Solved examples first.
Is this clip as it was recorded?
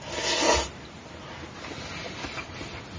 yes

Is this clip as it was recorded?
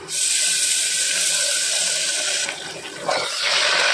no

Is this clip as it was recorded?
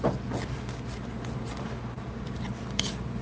yes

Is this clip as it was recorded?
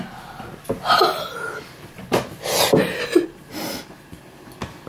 yes